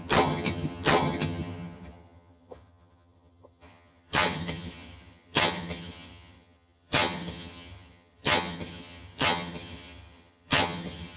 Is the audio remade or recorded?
remade